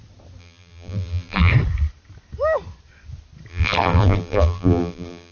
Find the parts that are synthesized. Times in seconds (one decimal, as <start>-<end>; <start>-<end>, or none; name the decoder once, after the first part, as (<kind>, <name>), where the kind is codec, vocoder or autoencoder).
0.4-1.5 (vocoder, BigVGAN v2); 3.5-5.3